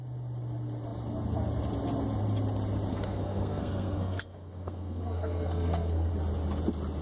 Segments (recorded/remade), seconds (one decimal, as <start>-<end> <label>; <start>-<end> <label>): 0.0-2.9 recorded; 2.9-6.1 remade; 6.1-7.0 recorded